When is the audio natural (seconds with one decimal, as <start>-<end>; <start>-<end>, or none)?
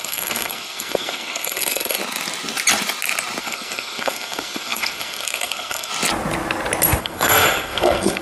2.0-3.4; 5.9-7.0